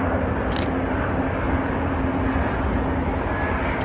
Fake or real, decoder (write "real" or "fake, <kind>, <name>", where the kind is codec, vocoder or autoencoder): real